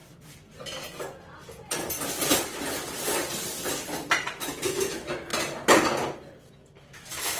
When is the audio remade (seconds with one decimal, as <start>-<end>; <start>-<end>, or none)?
4.4-5.3; 6.5-7.4